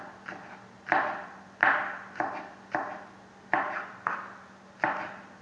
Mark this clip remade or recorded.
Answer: recorded